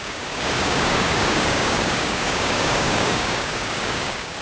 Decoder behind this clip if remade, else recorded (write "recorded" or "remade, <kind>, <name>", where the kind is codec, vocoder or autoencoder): remade, codec, DAC